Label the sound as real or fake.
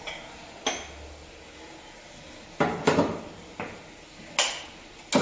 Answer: real